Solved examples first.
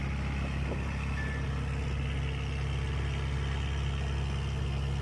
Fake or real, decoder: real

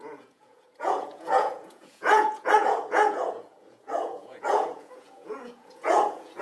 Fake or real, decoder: fake, vocoder, Vocos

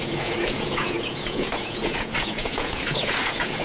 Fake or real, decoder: fake, vocoder, Vocos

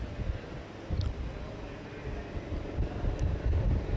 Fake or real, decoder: real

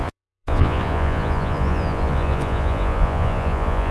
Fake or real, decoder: fake, vocoder, Vocos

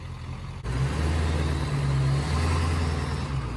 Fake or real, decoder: real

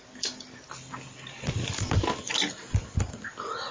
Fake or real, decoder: real